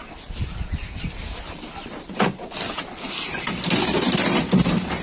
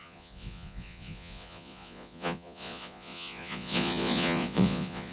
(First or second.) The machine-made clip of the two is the second